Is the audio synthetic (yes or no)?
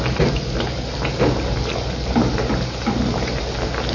no